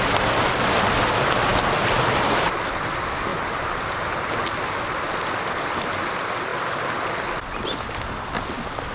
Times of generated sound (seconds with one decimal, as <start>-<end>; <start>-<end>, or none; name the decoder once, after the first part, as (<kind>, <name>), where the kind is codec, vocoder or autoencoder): none